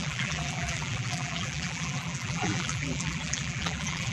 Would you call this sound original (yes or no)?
no